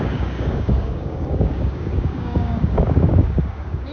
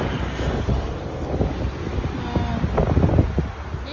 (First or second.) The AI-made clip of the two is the first